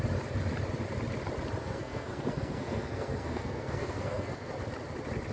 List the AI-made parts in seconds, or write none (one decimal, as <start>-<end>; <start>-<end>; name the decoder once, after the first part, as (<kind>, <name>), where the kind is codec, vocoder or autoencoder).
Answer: 1.6-4.5 (codec, SNAC)